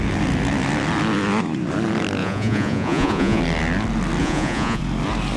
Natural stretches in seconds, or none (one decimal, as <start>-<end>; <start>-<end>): 0.0-2.2; 3.4-4.2; 4.8-5.4